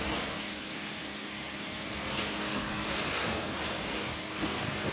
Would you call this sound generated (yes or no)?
yes